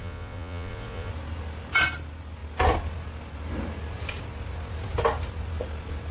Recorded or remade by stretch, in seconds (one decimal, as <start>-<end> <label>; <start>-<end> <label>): 0.0-1.1 remade; 1.1-6.1 recorded